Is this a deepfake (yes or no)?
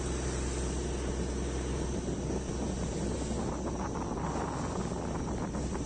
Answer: no